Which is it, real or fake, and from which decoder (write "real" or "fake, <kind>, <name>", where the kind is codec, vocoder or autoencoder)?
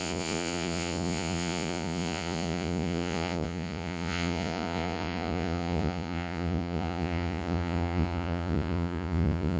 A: fake, vocoder, Vocos